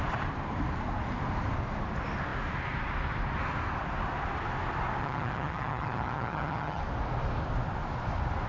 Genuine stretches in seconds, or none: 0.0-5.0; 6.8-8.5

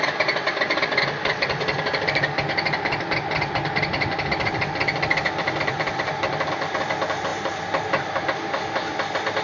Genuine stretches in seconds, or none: 0.0-9.4

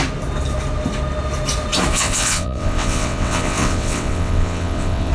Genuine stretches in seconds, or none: 0.0-1.9

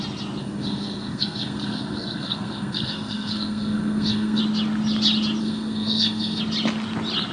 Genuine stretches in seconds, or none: 0.0-0.4; 4.4-5.4; 6.4-7.3

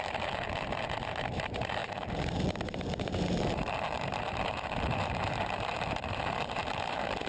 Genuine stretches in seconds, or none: none

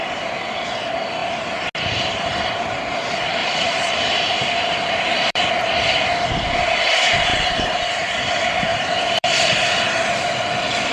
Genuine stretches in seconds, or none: 0.0-3.4; 5.5-7.3; 7.8-8.7; 10.1-10.9